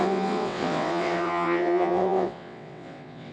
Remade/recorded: remade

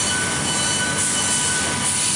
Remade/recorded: recorded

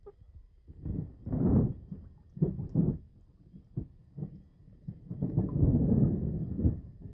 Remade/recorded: recorded